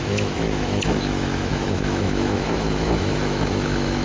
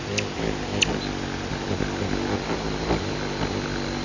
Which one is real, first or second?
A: second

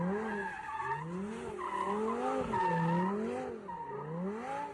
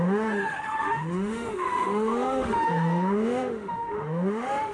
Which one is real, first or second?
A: first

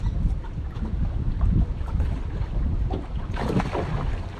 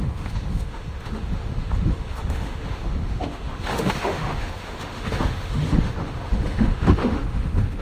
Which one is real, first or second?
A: first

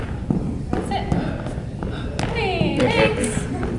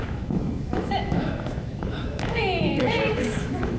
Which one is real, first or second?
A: first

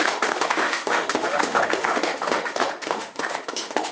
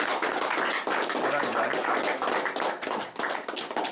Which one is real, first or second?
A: second